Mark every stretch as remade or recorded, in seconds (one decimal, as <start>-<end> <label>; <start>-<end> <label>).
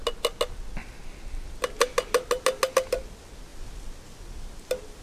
0.0-5.0 recorded